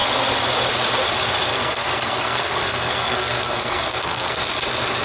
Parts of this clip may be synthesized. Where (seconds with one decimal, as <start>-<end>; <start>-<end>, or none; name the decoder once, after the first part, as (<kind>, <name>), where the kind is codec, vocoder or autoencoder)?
1.5-4.4 (codec, SNAC)